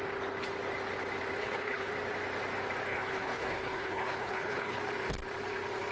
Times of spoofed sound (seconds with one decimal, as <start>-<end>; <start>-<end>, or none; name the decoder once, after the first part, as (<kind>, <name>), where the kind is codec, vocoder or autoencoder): 1.4-1.9 (codec, HILCodec); 2.9-4.8